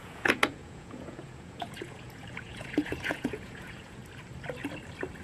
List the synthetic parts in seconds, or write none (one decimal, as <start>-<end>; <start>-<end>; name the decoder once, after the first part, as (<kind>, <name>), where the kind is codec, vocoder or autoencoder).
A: 0.0-4.0 (vocoder, Vocos)